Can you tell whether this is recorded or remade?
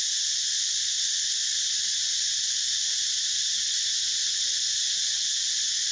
recorded